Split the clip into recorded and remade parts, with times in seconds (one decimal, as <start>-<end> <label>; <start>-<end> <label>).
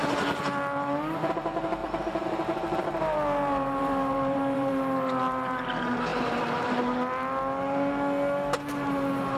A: 0.0-1.8 recorded; 1.8-4.7 remade; 4.7-6.1 recorded; 6.1-6.8 remade; 6.8-9.4 recorded